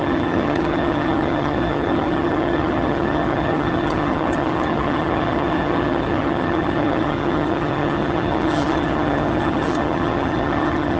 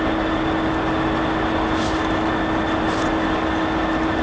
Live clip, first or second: second